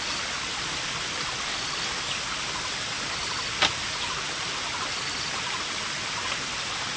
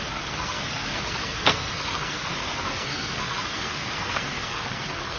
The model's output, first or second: second